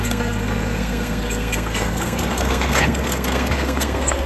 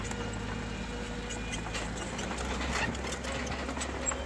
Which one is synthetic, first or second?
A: first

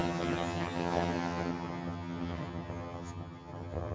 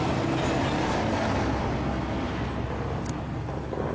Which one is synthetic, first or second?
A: first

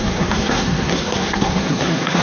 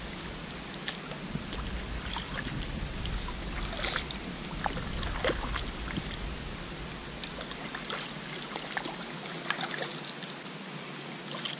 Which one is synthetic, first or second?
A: first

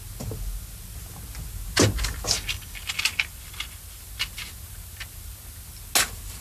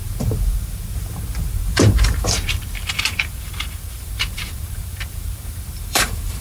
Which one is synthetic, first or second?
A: second